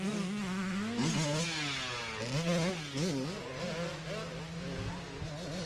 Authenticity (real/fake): real